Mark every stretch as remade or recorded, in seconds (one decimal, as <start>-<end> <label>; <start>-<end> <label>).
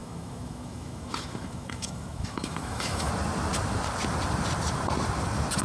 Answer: 0.0-3.1 remade; 3.1-5.6 recorded